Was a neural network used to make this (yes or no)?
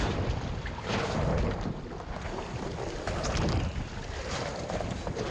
no